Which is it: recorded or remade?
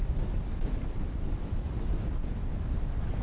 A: recorded